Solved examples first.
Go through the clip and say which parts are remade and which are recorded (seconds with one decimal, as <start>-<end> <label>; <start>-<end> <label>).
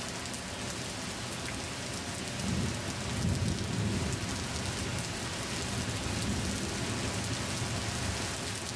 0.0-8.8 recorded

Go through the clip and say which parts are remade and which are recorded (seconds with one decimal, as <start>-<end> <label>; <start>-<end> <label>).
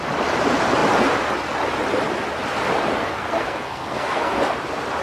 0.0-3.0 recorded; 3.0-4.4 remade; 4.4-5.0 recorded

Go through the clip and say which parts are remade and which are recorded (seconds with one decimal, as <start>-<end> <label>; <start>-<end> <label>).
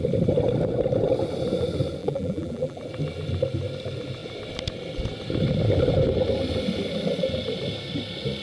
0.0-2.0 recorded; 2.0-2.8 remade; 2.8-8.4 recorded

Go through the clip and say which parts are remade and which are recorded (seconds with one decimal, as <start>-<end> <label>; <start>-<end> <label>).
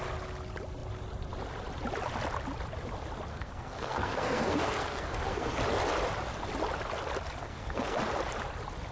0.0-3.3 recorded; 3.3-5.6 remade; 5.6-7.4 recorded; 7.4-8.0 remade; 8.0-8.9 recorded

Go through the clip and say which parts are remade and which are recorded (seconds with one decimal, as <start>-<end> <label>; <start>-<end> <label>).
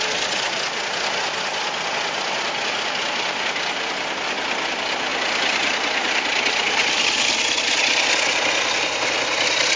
0.0-9.8 recorded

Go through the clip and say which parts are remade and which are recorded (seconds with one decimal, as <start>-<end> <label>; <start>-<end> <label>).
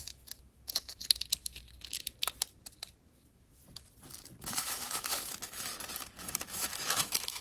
0.0-1.0 remade; 1.0-3.1 recorded; 3.1-3.6 remade; 3.6-4.4 recorded; 4.4-5.7 remade; 5.7-6.2 recorded; 6.2-7.4 remade